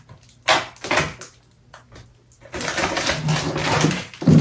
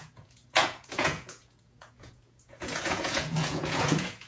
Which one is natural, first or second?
first